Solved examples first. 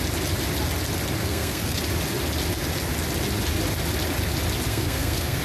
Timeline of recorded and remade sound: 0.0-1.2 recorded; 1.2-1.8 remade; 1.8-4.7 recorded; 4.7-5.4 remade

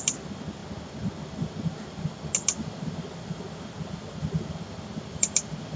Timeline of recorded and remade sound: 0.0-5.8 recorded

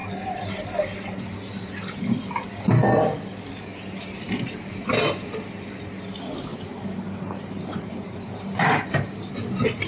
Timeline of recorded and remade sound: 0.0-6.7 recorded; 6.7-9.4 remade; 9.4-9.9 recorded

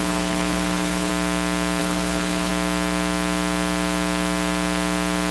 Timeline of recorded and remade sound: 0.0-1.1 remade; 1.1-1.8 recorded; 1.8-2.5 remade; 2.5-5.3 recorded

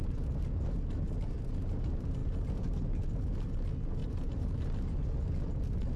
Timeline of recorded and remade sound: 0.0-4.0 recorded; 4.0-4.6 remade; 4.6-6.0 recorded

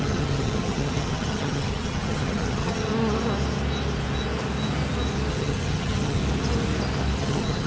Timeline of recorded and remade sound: 0.0-2.9 remade; 2.9-5.3 recorded; 5.3-6.2 remade; 6.2-7.2 recorded; 7.2-7.7 remade